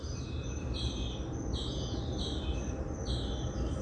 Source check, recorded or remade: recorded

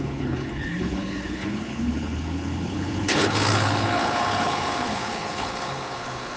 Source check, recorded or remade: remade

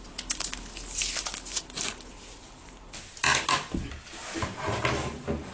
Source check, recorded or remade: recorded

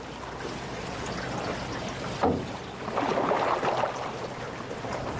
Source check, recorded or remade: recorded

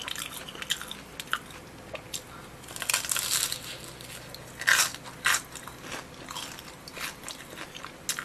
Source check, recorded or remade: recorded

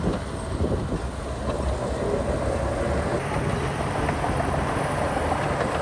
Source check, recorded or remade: recorded